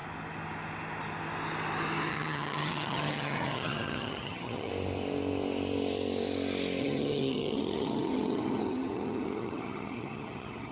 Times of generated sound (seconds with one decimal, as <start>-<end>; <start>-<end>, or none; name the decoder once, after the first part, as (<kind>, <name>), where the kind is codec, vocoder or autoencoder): 2.1-4.7 (vocoder, HiFi-GAN); 6.8-10.7